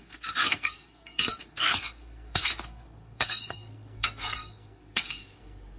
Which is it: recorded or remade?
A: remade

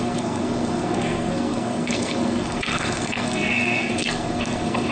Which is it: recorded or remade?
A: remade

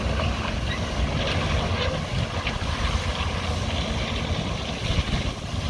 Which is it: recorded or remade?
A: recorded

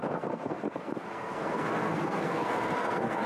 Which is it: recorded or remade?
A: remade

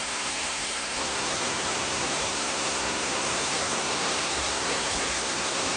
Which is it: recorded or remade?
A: remade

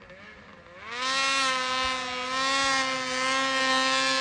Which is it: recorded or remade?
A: recorded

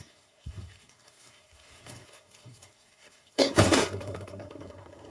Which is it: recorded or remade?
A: remade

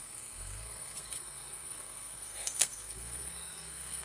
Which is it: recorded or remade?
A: remade